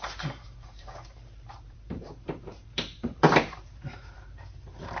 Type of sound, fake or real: fake